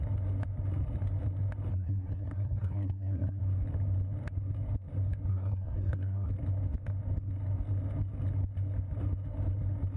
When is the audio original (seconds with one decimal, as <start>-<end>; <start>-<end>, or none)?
0.0-1.7; 3.4-5.3; 6.3-10.0